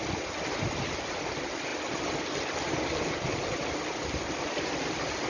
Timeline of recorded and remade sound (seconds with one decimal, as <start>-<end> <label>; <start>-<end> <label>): 0.0-5.3 recorded